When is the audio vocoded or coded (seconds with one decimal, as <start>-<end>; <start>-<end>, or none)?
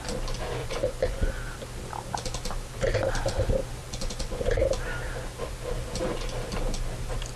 0.6-1.3; 3.8-4.4